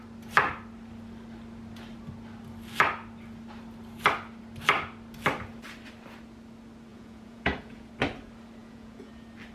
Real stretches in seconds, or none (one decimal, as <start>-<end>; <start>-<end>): 0.0-6.9; 7.9-8.6; 9.1-9.5